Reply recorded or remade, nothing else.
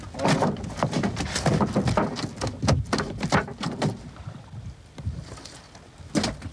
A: recorded